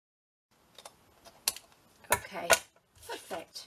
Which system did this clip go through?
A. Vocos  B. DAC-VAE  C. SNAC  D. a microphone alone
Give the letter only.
D